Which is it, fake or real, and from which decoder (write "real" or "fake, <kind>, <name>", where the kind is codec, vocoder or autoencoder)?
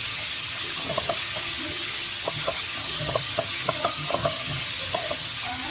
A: fake, vocoder, HiFi-GAN